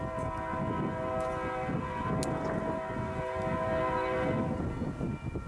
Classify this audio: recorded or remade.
recorded